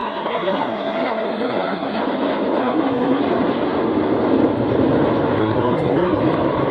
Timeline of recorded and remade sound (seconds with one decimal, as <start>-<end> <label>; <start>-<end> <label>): 0.0-2.0 remade; 2.0-2.6 recorded; 2.6-3.2 remade; 3.2-5.4 recorded; 5.4-6.2 remade; 6.2-6.7 recorded